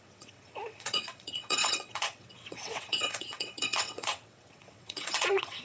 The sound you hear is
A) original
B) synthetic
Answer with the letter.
B